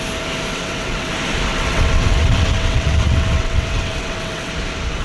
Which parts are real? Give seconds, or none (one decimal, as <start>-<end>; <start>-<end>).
0.0-0.5; 1.1-1.5; 4.5-5.0